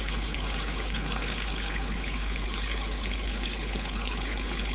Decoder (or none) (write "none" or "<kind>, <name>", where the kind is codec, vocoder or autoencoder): codec, HILCodec